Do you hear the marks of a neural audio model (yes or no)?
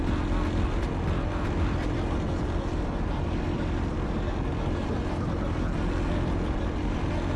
no